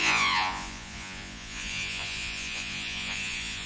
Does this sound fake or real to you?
fake